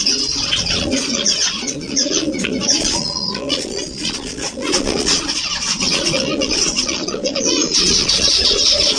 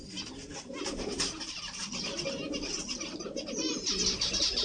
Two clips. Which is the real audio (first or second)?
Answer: second